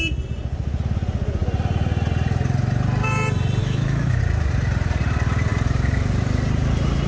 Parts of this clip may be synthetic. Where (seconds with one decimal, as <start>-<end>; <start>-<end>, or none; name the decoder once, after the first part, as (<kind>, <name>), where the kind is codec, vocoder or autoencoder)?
3.6-4.2 (autoencoder, DAC-VAE)